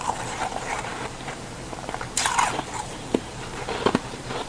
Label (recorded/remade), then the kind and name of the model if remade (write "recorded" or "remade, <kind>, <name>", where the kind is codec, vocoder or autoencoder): remade, vocoder, BigVGAN v2